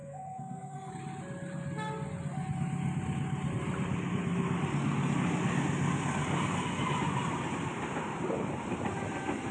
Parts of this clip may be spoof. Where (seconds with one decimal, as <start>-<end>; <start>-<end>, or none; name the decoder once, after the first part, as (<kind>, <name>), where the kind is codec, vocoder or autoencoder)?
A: 0.0-0.9 (codec, SNAC)